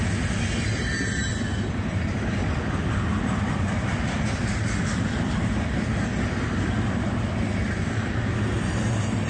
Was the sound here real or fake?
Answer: real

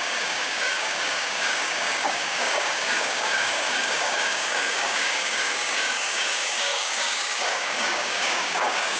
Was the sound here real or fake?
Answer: fake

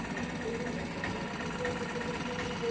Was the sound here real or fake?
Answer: real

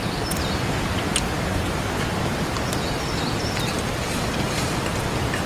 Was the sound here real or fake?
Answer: real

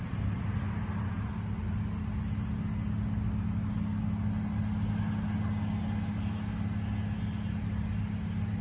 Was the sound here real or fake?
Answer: real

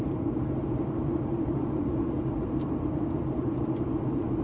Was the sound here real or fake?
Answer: fake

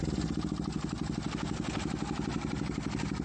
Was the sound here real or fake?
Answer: real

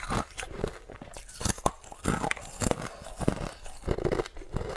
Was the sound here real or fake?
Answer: real